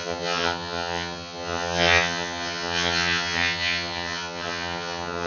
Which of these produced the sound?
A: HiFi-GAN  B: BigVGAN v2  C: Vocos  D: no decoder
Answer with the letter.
A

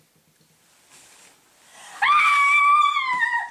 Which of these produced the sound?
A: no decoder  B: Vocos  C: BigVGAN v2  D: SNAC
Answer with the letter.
A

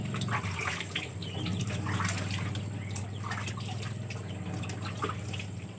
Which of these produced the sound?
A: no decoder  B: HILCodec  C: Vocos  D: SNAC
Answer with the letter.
A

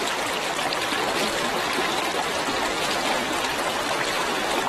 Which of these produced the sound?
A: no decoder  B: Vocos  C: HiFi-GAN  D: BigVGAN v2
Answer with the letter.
A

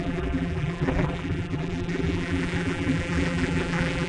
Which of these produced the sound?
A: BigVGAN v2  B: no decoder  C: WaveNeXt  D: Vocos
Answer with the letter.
A